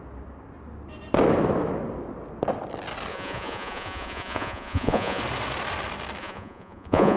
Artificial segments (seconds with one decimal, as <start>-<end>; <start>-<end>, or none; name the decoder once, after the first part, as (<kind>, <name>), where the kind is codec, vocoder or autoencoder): 3.1-5.2 (vocoder, Vocos); 6.2-7.2